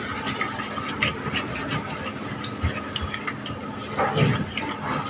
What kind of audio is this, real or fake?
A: real